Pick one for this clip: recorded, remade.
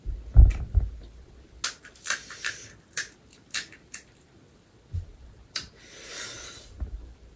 recorded